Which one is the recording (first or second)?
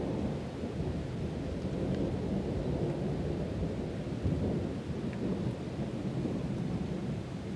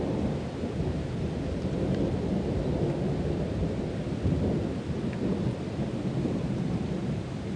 first